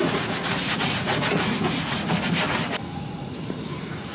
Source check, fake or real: fake